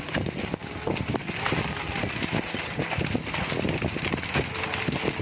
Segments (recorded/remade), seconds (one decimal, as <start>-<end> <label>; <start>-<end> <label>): 0.0-5.2 recorded